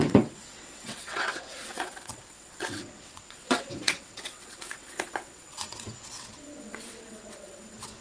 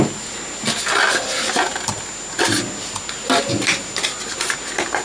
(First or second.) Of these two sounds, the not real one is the first